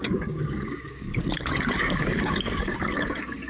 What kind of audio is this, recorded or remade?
remade